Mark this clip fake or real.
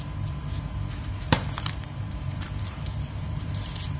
fake